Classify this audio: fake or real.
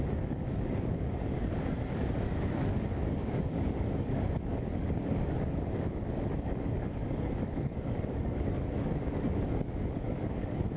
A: fake